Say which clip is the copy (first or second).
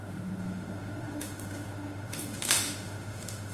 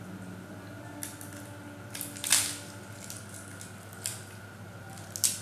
first